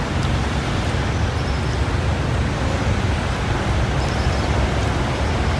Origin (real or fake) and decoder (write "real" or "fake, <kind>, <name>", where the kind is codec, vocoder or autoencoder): real